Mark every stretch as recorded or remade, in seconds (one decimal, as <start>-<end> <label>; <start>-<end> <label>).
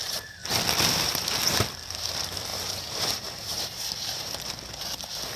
0.0-2.5 recorded; 2.5-5.0 remade; 5.0-5.4 recorded